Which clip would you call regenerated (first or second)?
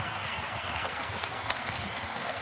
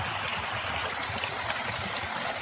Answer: first